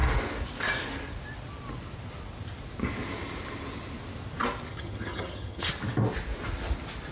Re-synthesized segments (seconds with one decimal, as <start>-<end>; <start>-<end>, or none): 4.7-5.7